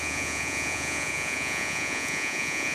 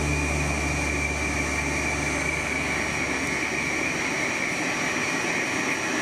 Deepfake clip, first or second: first